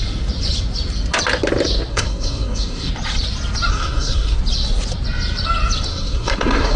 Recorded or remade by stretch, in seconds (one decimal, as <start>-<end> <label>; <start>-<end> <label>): 0.0-1.9 recorded; 1.9-2.9 remade; 2.9-3.7 recorded; 3.7-4.4 remade; 4.4-5.9 recorded; 5.9-6.8 remade